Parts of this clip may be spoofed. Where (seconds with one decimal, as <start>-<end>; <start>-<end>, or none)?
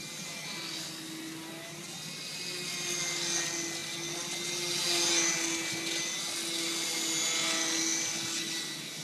none